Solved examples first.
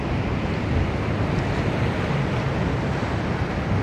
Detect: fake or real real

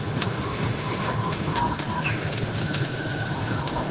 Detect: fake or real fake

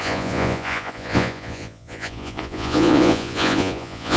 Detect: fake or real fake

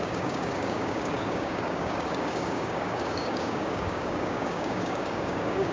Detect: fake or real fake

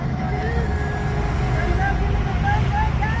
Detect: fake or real real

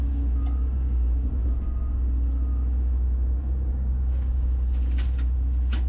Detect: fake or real real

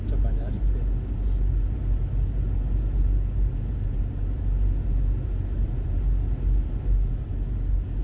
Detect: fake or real real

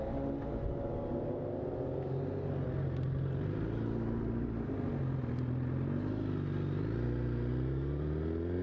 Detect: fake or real real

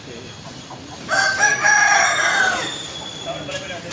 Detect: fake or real real